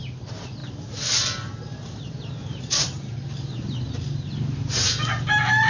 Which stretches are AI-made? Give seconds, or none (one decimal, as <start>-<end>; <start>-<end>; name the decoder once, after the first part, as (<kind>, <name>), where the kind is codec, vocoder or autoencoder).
0.6-1.5 (vocoder, BigVGAN v2)